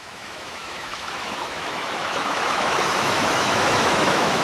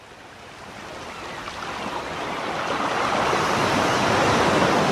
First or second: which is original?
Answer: second